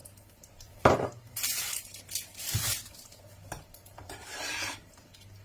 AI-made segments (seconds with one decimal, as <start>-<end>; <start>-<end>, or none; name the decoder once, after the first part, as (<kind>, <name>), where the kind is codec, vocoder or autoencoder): 0.0-5.4 (vocoder, BigVGAN v2)